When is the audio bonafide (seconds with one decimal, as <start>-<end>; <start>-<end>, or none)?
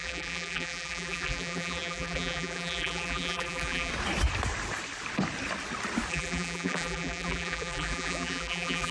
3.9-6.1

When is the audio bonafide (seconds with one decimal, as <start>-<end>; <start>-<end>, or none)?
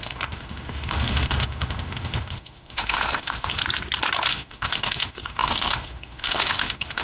3.6-4.3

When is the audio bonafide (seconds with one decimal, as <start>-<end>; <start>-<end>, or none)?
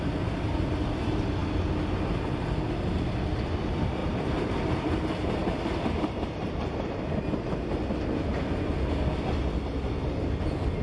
0.0-4.0; 7.2-10.8